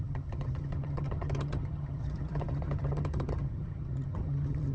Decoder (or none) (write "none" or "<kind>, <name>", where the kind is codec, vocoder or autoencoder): vocoder, HiFi-GAN